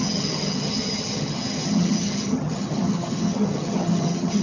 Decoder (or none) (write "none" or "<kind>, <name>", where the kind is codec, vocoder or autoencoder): vocoder, HiFi-GAN